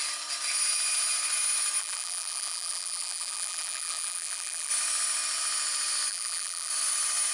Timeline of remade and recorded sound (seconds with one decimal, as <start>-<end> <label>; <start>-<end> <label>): 0.0-1.8 recorded; 1.8-4.7 remade; 4.7-6.1 recorded; 6.1-6.7 remade; 6.7-7.3 recorded